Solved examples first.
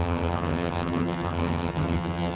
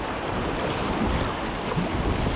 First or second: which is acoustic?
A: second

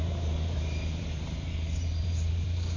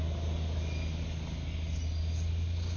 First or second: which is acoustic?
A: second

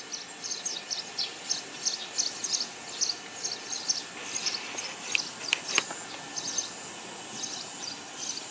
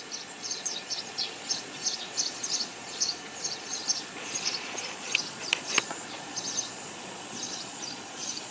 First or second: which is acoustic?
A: first